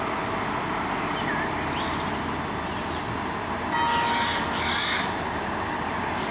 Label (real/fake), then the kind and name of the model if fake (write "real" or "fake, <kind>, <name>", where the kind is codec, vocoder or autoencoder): real